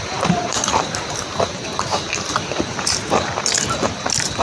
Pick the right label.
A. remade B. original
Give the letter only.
A